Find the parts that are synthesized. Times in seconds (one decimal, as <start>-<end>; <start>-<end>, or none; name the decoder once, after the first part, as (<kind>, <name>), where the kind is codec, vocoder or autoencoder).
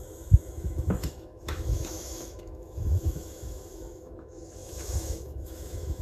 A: 0.0-6.0 (autoencoder, DAC-VAE)